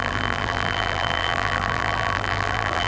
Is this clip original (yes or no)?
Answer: no